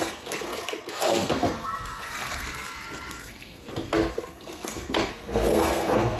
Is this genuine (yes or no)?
no